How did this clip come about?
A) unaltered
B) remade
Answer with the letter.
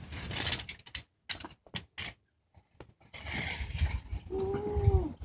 A